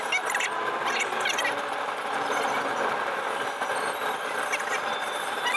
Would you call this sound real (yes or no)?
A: no